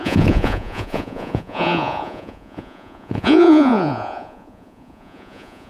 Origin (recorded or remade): remade